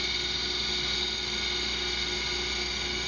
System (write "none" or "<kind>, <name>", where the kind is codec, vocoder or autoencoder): none